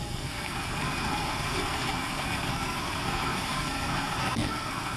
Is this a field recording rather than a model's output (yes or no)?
no